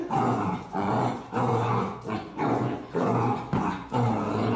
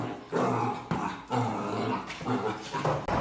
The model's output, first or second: first